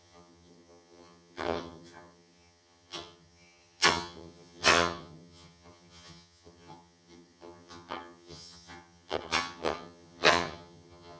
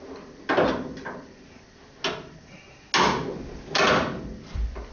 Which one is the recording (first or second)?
second